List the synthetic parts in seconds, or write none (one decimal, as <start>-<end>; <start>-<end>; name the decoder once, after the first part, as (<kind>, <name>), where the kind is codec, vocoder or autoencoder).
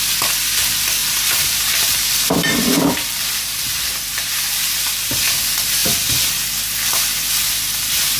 1.0-5.1 (vocoder, BigVGAN v2)